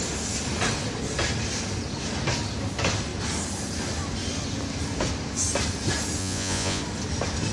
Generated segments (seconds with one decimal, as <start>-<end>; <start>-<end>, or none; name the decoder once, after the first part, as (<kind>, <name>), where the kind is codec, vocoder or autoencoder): 6.2-6.8 (vocoder, Vocos)